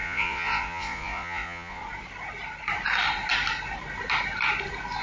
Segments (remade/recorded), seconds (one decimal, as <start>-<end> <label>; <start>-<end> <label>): 0.0-1.8 remade; 1.8-5.0 recorded